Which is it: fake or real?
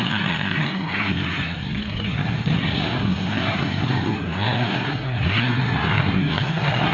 fake